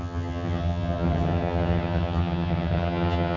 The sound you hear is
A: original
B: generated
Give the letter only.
B